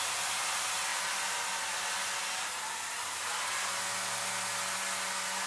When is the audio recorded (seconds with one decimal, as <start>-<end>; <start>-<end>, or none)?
0.0-5.5